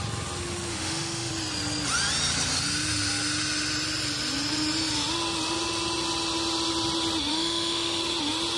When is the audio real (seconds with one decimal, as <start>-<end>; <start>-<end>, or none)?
0.0-0.7; 1.3-7.3; 8.0-8.6